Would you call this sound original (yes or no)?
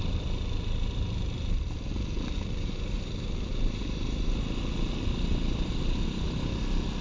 yes